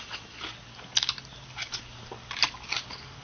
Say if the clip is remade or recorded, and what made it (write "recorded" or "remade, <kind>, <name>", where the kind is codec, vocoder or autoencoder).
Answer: recorded